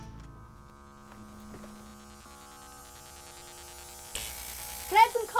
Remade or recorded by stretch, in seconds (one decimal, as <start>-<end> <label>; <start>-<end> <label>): 0.0-5.4 recorded